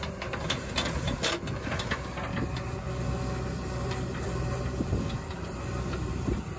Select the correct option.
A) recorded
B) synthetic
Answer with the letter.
A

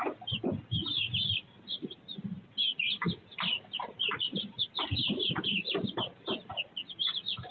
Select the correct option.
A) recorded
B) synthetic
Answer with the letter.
A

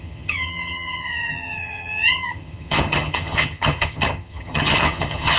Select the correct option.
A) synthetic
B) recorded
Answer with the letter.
A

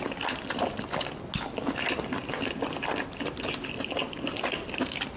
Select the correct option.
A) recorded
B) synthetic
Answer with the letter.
A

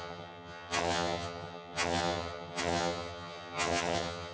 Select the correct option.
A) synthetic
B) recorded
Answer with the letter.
A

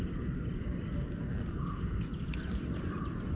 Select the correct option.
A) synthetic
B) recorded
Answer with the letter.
B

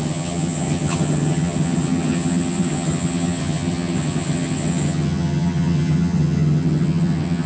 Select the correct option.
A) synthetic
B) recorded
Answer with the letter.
A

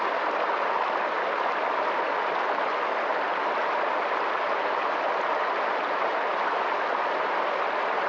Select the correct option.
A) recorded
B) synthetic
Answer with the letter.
A